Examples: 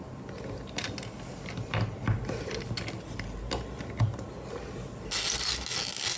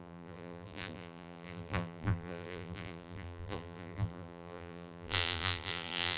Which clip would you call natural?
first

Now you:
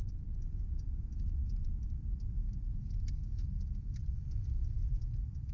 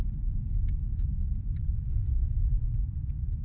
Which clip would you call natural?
first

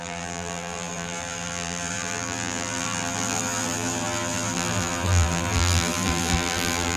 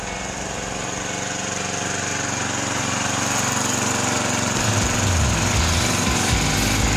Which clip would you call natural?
second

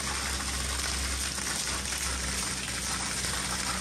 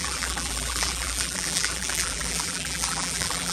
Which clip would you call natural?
first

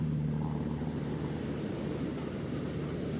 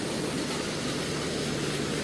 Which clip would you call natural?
second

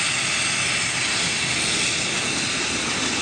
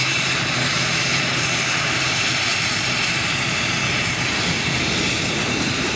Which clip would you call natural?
first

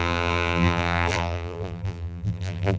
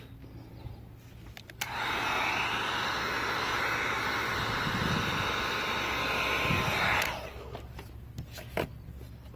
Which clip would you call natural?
second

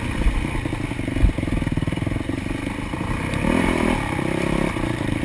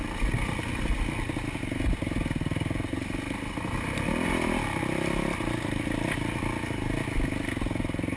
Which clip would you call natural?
second